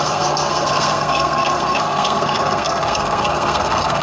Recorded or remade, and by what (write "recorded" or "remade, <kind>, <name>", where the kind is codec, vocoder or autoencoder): remade, codec, SNAC